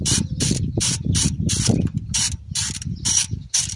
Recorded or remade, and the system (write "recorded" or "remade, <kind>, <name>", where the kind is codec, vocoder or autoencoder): remade, vocoder, BigVGAN v2